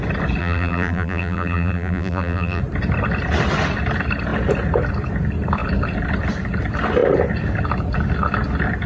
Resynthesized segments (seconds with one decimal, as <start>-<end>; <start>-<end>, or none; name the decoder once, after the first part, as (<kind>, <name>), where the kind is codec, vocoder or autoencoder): 0.4-2.6 (vocoder, BigVGAN v2)